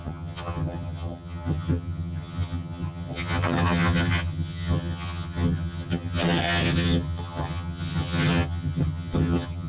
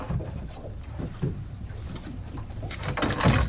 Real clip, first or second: second